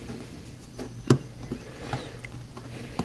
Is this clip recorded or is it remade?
recorded